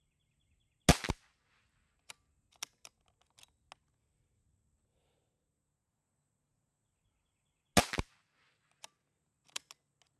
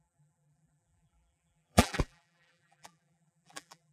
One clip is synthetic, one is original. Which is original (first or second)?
first